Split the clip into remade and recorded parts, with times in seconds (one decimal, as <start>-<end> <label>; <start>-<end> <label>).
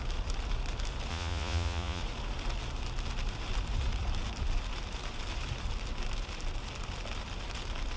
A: 0.0-1.1 recorded; 1.1-2.0 remade; 2.0-8.0 recorded